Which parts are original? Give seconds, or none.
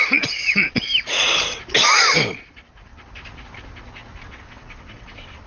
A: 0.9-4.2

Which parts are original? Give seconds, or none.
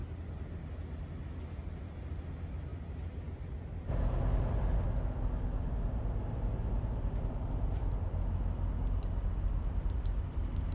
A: 0.0-10.7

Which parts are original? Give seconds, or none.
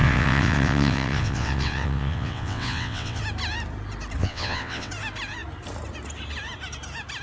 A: 3.2-4.2; 4.9-7.2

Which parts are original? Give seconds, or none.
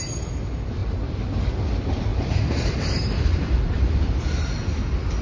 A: 0.0-0.8; 1.6-2.1; 4.0-5.2